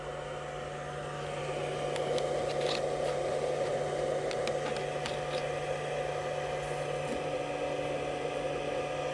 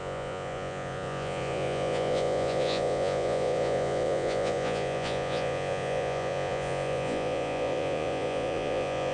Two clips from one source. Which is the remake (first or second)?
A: second